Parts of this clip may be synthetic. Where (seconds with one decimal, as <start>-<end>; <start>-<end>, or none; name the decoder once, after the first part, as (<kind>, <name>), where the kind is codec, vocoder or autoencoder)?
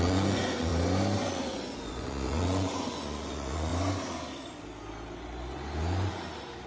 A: 0.0-0.7 (vocoder, Vocos); 1.3-3.7